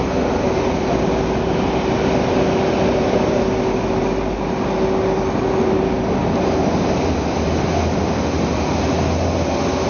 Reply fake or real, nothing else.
real